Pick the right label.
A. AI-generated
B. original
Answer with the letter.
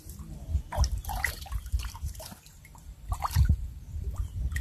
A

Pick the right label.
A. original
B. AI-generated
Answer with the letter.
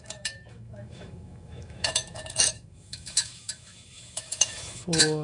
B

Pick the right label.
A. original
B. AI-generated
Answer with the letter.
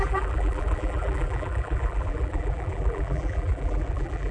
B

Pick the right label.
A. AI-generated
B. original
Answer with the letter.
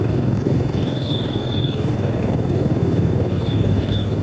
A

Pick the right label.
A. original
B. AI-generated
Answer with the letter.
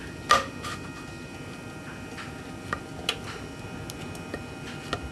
A